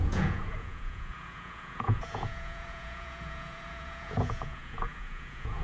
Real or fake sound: fake